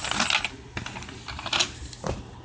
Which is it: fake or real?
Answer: real